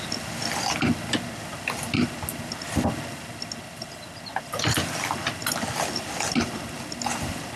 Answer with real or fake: real